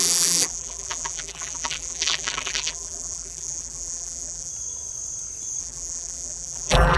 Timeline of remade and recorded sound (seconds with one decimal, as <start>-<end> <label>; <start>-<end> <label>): 0.0-4.5 remade; 4.5-5.6 recorded; 5.6-7.0 remade